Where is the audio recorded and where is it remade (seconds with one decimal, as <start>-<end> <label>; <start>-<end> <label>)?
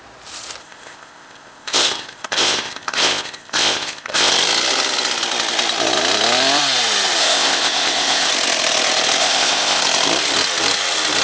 0.0-0.6 recorded; 0.6-4.3 remade; 4.3-7.2 recorded; 7.2-8.3 remade; 8.3-9.2 recorded; 9.2-9.8 remade; 9.8-11.2 recorded